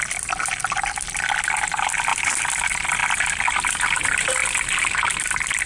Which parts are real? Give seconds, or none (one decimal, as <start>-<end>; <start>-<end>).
0.0-5.7